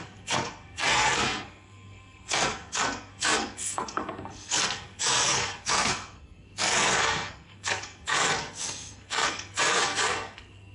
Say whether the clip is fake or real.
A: fake